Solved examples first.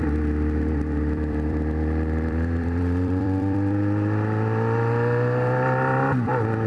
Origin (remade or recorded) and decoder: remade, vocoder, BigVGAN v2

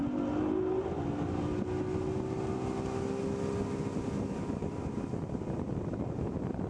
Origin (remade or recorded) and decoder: recorded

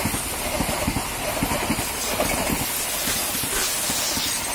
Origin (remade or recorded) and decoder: recorded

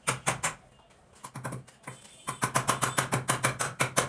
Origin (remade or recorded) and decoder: recorded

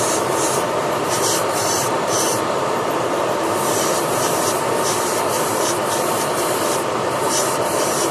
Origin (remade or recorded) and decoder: remade, vocoder, BigVGAN v2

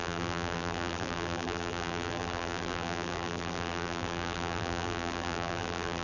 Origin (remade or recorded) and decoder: remade, vocoder, BigVGAN v2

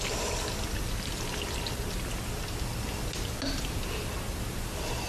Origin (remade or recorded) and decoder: recorded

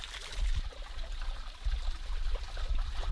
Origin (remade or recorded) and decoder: remade, vocoder, BigVGAN v2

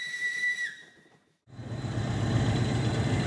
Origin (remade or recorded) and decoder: remade, vocoder, BigVGAN v2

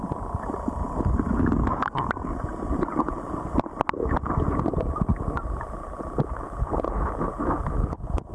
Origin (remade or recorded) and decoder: recorded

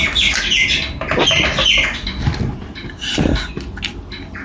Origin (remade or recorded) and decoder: recorded